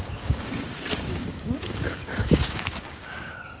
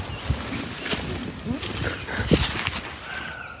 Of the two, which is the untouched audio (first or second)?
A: second